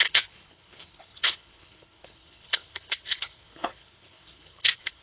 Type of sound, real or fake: fake